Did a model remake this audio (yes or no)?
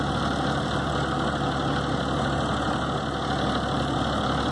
no